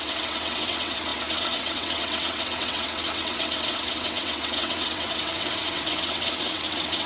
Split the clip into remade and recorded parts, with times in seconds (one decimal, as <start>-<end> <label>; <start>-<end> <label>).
0.0-7.1 remade